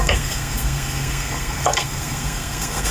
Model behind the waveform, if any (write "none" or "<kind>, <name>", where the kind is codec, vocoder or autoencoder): codec, SNAC